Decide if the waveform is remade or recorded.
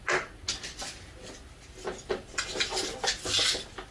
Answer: recorded